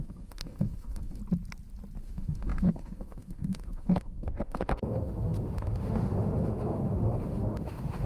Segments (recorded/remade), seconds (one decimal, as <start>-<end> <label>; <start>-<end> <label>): 0.0-1.2 remade; 1.2-2.0 recorded; 2.0-8.1 remade